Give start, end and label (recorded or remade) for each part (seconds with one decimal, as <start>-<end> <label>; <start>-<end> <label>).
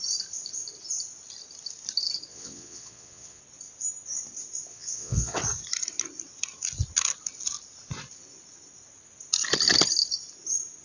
0.0-2.3 recorded; 2.3-3.4 remade; 3.4-4.7 recorded; 4.7-5.4 remade; 5.4-10.8 recorded